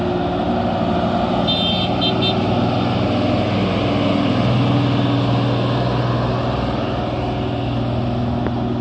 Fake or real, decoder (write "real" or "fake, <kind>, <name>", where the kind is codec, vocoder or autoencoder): real